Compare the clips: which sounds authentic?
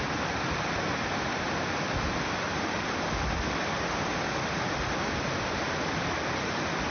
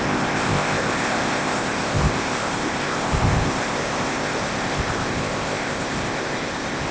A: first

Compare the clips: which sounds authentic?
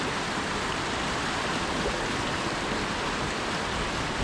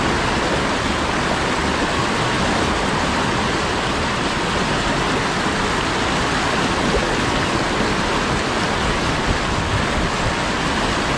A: second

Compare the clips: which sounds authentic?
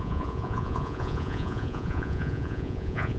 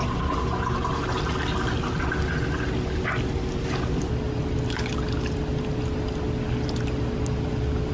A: second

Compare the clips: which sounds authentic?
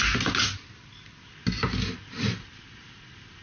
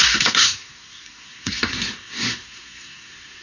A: first